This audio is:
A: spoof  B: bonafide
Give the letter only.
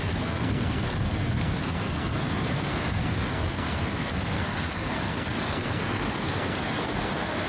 A